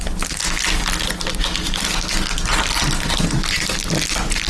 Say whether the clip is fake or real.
real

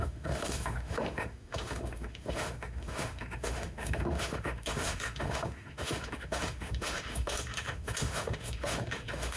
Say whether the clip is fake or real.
fake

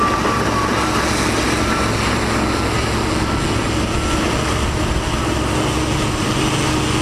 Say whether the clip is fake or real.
real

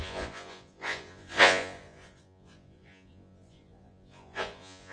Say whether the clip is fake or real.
fake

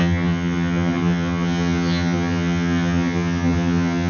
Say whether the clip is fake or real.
fake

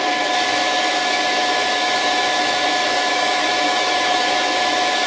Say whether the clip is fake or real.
fake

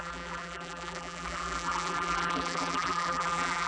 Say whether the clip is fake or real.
fake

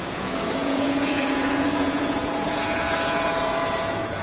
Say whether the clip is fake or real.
fake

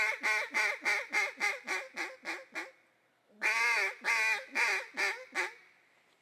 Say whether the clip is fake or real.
real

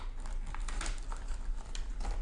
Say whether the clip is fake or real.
real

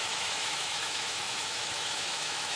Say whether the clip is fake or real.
fake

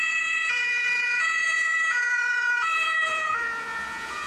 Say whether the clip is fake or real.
fake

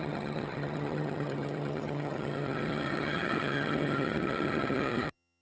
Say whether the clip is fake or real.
fake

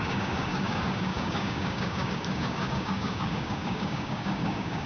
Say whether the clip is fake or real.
fake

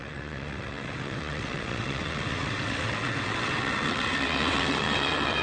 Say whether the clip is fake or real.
fake